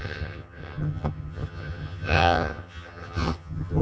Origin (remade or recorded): remade